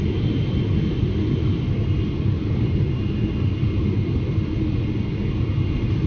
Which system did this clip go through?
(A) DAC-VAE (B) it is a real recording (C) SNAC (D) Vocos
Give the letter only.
B